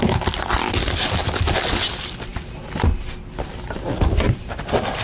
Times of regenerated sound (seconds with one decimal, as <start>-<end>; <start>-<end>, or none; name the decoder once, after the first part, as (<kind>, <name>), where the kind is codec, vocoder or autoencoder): none